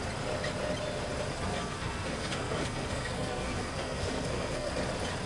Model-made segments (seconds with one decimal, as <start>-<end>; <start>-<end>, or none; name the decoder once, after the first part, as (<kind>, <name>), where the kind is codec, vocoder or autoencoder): 1.5-4.7 (codec, SNAC)